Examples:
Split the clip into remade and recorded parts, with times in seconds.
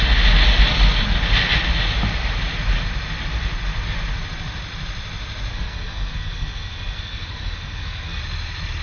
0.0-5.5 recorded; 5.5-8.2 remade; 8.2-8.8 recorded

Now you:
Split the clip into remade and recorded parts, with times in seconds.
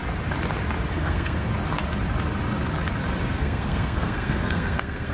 0.0-0.9 recorded; 0.9-1.5 remade; 1.5-3.4 recorded; 3.4-5.1 remade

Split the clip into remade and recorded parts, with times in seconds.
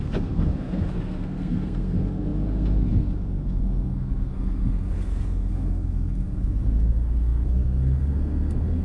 0.0-8.8 remade